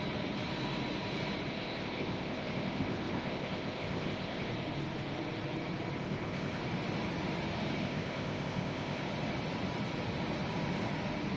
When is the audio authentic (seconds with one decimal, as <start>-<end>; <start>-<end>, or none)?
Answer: 0.0-1.5; 4.5-6.0; 6.6-7.8; 9.0-11.4